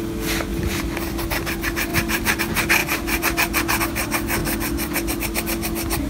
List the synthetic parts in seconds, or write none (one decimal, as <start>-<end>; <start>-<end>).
0.5-1.2; 1.9-2.4